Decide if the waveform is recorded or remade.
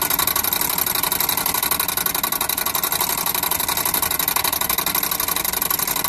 recorded